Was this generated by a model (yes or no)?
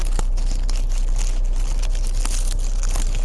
no